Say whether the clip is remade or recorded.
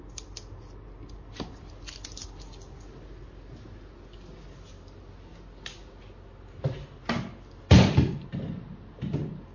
recorded